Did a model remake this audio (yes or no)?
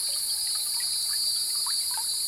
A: yes